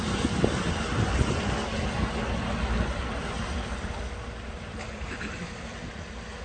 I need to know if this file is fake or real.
real